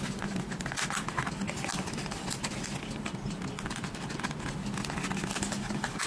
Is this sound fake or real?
real